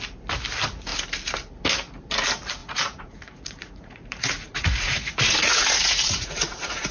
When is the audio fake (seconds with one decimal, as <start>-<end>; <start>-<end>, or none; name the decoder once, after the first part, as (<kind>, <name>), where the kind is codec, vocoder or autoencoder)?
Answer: 2.6-6.9 (vocoder, Vocos)